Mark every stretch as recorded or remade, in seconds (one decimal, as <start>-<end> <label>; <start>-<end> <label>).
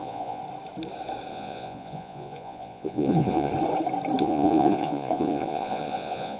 0.0-0.4 remade; 0.4-1.3 recorded; 1.3-3.5 remade; 3.5-4.2 recorded; 4.2-6.4 remade